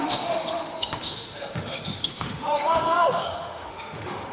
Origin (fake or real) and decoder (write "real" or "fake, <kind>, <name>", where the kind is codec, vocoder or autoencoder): fake, autoencoder, DAC-VAE